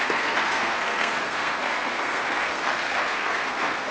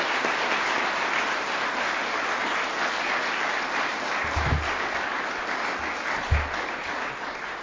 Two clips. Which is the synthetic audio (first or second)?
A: first